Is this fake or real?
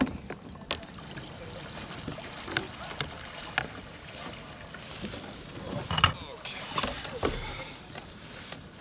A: real